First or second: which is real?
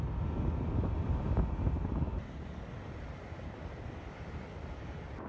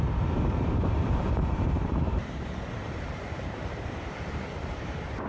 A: first